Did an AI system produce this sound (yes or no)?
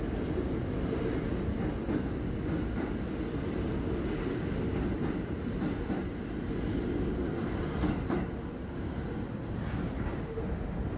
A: no